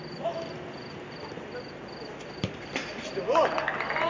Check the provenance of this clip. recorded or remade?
recorded